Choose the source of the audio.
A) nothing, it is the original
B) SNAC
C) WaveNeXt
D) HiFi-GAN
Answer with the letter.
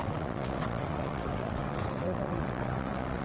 C